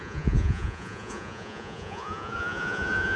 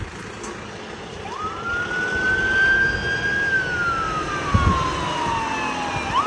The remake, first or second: first